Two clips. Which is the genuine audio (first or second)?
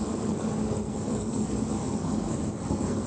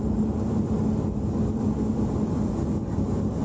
second